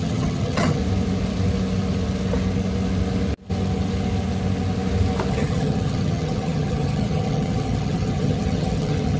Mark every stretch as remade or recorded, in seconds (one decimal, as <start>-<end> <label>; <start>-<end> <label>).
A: 0.0-0.8 remade; 0.8-5.3 recorded; 5.3-9.2 remade